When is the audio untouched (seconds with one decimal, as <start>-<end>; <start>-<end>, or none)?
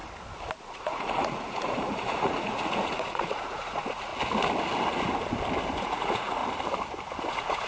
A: 0.0-0.6; 4.1-5.8; 6.4-7.3